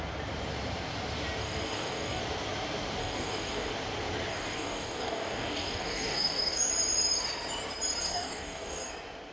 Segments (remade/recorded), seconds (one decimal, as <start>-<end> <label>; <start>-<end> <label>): 0.0-1.4 recorded; 1.4-2.2 remade; 2.2-3.0 recorded; 3.0-3.7 remade; 3.7-4.3 recorded; 4.3-6.7 remade; 6.7-8.0 recorded; 8.0-8.9 remade; 8.9-9.3 recorded